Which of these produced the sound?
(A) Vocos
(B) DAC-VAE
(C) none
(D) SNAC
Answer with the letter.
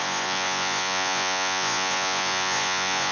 A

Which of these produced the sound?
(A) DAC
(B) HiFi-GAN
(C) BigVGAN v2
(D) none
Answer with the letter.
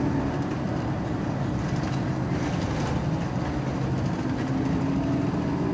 D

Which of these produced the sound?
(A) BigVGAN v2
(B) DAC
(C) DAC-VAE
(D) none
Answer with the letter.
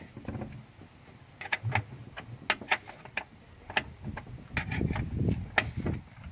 D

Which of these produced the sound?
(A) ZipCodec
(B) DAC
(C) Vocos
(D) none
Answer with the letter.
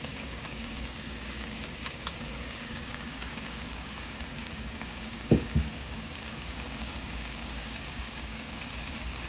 B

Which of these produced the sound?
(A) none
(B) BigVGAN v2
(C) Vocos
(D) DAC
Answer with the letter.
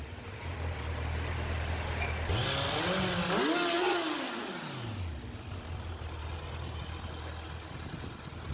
A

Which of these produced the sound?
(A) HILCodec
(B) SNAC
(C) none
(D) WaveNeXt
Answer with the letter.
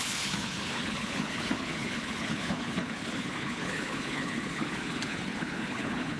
A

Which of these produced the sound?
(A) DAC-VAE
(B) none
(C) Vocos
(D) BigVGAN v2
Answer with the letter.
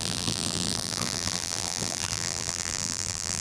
D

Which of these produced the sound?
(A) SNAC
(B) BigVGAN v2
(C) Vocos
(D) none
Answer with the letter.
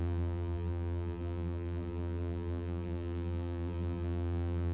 B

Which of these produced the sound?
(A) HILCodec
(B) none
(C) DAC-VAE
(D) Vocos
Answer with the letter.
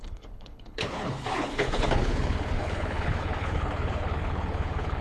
A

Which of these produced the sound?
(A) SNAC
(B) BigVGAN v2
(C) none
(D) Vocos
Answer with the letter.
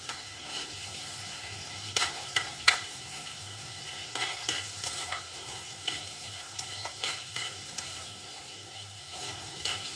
A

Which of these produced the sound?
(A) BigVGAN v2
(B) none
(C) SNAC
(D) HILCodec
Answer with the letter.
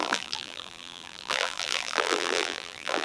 A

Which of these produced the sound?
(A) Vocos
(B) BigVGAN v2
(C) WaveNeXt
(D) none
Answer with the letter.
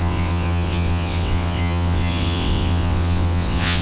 C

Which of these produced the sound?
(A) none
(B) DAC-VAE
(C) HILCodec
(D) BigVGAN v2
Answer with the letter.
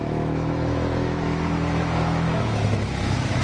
B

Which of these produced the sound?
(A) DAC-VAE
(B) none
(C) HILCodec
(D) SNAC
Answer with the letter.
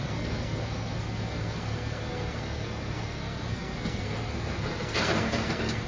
D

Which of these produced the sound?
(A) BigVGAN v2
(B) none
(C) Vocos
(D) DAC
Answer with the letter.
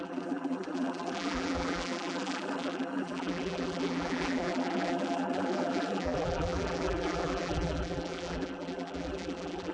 A